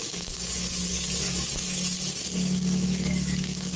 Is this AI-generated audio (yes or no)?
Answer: yes